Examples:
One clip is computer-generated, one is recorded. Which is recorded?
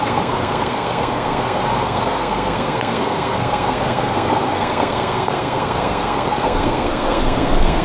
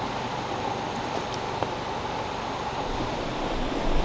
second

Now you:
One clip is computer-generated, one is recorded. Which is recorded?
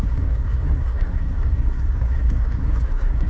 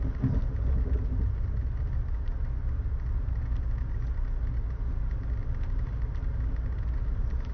second